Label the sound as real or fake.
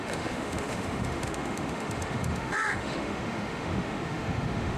fake